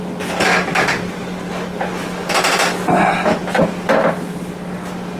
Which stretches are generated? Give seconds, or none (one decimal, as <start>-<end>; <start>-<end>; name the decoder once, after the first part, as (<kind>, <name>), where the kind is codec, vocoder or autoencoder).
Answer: none